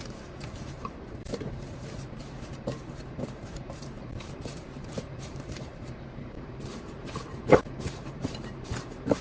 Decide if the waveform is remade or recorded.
remade